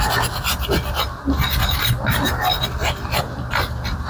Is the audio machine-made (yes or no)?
no